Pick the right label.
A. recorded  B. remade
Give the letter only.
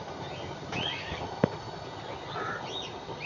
A